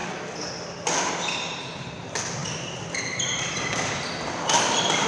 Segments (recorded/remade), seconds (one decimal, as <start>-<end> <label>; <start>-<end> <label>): 0.0-5.1 recorded